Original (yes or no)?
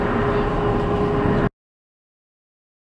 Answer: yes